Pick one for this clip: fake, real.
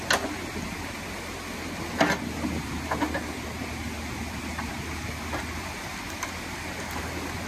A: real